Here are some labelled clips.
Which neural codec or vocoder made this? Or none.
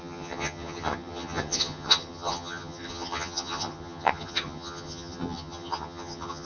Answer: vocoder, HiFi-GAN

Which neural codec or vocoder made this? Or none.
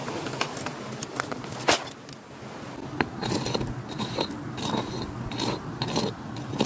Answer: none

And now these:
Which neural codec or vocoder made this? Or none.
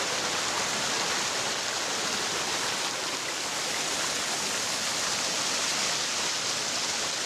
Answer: none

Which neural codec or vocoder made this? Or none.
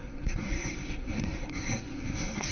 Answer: codec, SNAC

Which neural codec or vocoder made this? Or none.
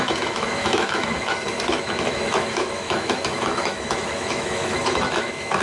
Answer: autoencoder, DAC-VAE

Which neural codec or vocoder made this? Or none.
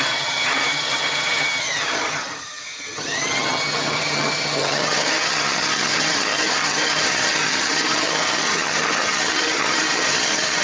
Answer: vocoder, HiFi-GAN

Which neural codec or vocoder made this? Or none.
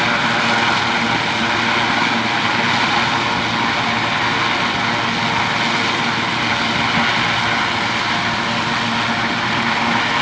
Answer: none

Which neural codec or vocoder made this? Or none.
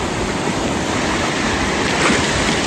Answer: none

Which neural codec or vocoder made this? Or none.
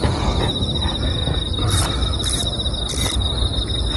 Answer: none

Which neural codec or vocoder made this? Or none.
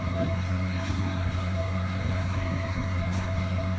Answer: codec, SNAC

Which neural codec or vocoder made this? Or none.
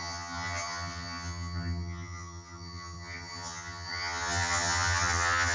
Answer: vocoder, HiFi-GAN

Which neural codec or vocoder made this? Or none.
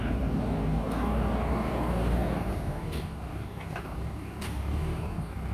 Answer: codec, DAC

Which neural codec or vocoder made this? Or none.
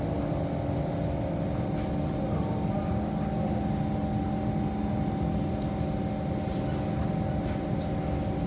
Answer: none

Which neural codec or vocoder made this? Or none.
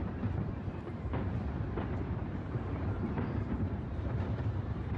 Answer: vocoder, BigVGAN v2